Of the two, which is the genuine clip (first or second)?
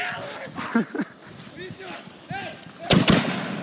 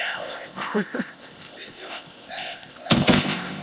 first